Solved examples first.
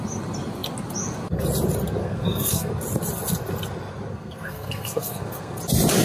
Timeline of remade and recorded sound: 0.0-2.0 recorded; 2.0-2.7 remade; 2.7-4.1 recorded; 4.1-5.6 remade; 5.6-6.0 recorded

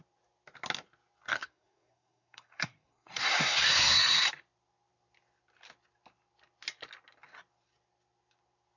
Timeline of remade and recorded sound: 0.0-1.3 recorded; 1.3-4.3 remade; 4.3-8.8 recorded

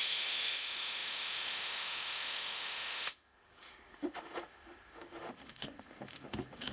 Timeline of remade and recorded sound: 0.0-6.7 remade

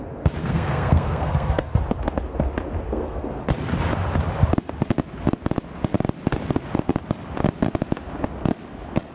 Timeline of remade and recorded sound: 0.0-0.4 recorded; 0.4-1.8 remade; 1.8-2.9 recorded; 2.9-3.4 remade; 3.4-9.1 recorded

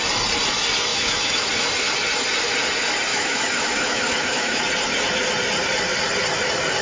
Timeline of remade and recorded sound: 0.0-0.9 recorded; 0.9-1.5 remade; 1.5-3.1 recorded; 3.1-4.6 remade; 4.6-6.8 recorded

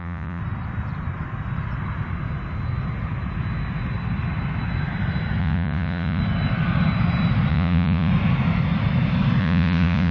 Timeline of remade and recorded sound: 0.0-0.4 remade; 0.4-5.4 recorded; 5.4-6.2 remade; 6.2-7.5 recorded; 7.5-8.1 remade; 8.1-9.4 recorded; 9.4-10.1 remade